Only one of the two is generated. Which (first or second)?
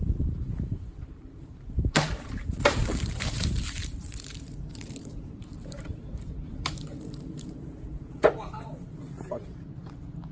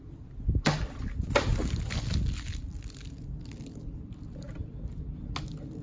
first